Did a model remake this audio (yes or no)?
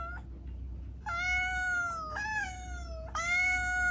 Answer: no